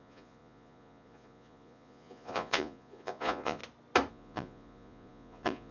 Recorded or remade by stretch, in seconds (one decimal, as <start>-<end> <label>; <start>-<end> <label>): 0.0-3.6 remade; 3.6-4.1 recorded; 4.1-5.7 remade